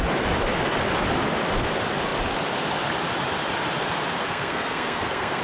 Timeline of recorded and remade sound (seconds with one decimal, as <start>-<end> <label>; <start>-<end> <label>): 0.0-4.2 recorded; 4.2-5.4 remade